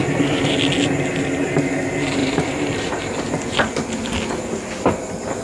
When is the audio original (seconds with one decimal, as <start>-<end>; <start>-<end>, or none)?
0.0-2.2; 3.1-5.4